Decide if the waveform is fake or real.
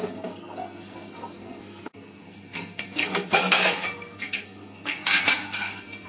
fake